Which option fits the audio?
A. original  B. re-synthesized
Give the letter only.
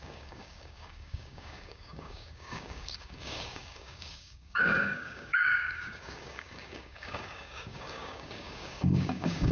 B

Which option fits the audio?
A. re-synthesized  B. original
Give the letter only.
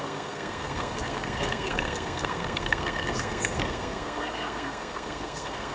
A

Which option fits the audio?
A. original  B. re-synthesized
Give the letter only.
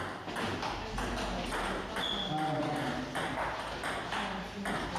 A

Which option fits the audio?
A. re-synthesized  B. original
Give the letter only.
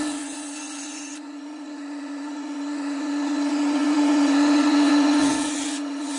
A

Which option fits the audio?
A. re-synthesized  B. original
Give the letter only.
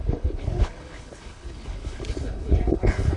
A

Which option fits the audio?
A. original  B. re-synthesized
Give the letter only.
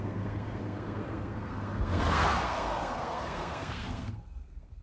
B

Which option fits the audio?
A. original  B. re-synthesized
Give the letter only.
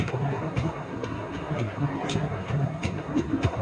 B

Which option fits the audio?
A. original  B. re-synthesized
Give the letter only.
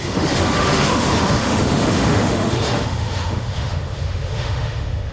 B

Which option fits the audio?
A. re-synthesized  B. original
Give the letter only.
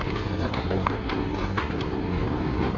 A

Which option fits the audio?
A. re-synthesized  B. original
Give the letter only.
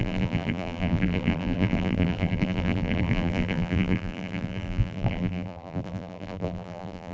A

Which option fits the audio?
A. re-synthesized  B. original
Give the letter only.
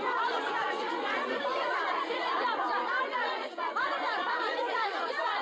A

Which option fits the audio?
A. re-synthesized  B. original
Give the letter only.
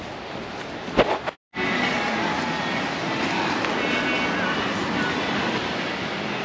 B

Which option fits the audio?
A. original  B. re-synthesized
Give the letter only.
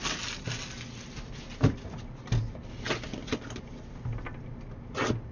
A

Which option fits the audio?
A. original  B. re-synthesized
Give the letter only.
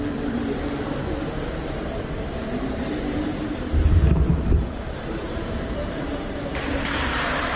B